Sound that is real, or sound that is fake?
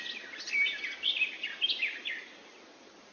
real